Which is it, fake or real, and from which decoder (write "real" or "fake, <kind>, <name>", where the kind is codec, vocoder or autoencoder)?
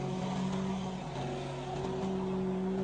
real